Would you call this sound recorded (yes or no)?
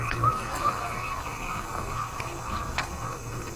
no